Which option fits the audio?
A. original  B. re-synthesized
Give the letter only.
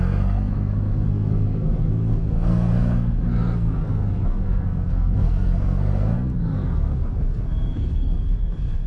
B